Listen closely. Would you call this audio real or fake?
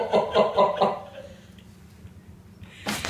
real